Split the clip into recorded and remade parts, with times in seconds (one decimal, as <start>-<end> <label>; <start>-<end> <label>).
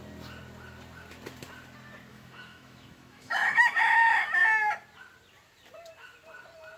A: 0.0-2.1 recorded; 2.1-4.4 remade; 4.4-6.8 recorded